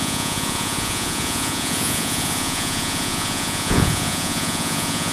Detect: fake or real fake